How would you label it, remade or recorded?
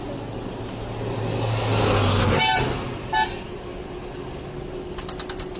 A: recorded